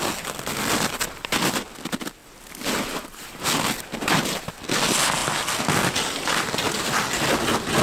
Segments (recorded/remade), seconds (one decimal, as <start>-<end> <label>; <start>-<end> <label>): 0.0-7.8 recorded

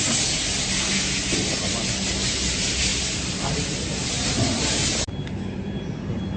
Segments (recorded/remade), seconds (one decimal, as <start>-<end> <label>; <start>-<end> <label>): 0.0-6.4 recorded

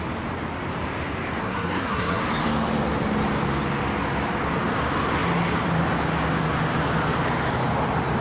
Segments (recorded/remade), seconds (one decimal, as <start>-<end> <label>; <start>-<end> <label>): 0.0-1.4 recorded; 1.4-2.2 remade; 2.2-8.2 recorded